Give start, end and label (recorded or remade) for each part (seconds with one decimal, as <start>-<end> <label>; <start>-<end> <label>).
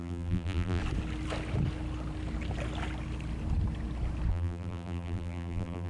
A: 0.0-0.8 remade; 0.8-4.3 recorded; 4.3-5.9 remade